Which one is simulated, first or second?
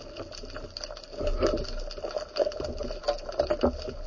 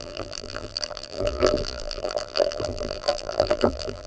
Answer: second